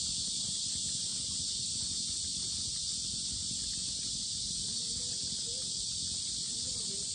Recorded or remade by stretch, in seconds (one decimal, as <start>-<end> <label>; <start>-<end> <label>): 0.0-1.1 recorded; 1.1-1.8 remade; 1.8-7.1 recorded